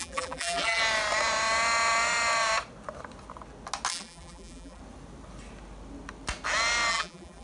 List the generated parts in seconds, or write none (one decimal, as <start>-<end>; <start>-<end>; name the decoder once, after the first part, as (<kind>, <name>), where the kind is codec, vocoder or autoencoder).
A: 0.0-0.8 (vocoder, BigVGAN v2); 3.9-4.8; 6.9-7.4